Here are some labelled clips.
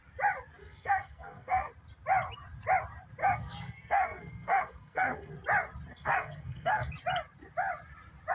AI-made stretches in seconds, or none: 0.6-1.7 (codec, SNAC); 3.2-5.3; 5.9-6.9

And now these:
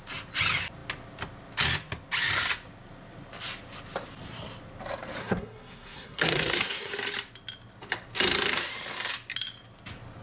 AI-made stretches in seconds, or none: 5.2-6.9 (codec, SNAC)

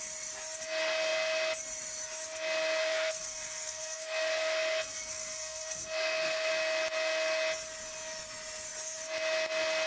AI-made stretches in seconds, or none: 2.8-6.5 (codec, SNAC)

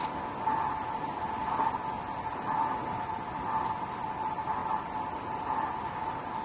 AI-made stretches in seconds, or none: none

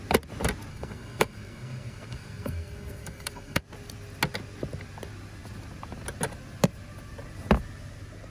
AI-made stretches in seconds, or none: 0.7-3.6 (codec, SNAC)